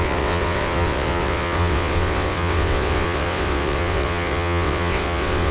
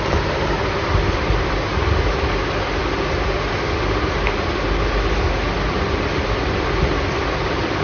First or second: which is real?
second